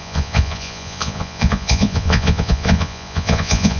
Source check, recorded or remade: remade